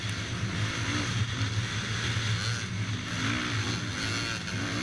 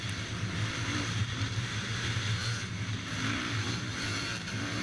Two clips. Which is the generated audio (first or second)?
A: second